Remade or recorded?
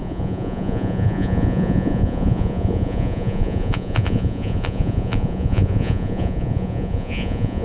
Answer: remade